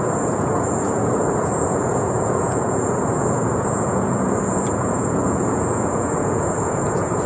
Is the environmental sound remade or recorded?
remade